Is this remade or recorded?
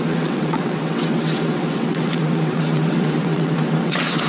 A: remade